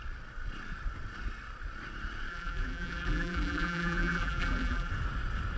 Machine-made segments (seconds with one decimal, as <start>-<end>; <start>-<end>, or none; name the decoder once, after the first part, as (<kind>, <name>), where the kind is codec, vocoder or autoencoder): 2.3-4.9 (vocoder, BigVGAN v2)